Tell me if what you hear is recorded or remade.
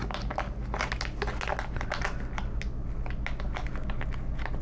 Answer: recorded